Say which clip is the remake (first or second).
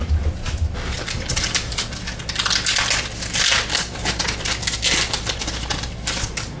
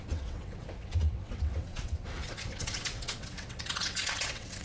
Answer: second